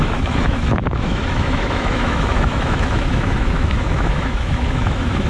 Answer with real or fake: fake